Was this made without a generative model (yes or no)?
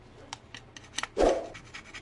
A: yes